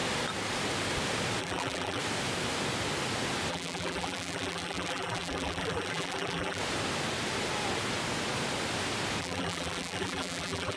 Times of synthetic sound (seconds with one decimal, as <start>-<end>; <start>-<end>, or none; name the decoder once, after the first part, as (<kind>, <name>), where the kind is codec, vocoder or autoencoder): 1.4-2.0 (vocoder, BigVGAN v2); 3.5-6.6; 9.2-10.8